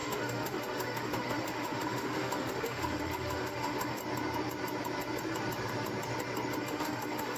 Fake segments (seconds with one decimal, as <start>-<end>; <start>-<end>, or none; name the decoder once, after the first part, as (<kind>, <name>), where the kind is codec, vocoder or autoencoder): 0.0-4.0 (autoencoder, DAC-VAE); 6.6-7.4